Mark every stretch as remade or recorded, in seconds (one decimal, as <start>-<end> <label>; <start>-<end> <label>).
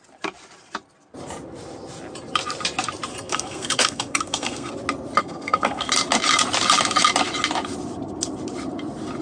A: 0.0-3.1 recorded; 3.1-4.7 remade; 4.7-5.2 recorded; 5.2-5.9 remade; 5.9-9.2 recorded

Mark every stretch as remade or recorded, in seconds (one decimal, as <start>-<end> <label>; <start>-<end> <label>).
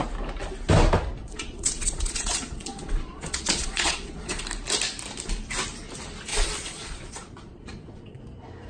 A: 0.0-1.2 recorded; 1.2-4.4 remade; 4.4-6.3 recorded; 6.3-8.2 remade; 8.2-8.7 recorded